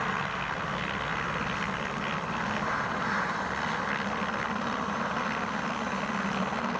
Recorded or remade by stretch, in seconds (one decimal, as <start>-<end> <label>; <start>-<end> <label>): 0.0-6.8 recorded